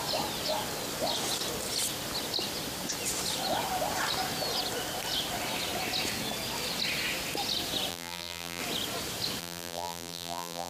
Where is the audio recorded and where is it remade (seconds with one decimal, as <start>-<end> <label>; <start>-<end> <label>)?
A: 0.0-7.9 recorded; 7.9-8.6 remade; 8.6-9.4 recorded; 9.4-10.7 remade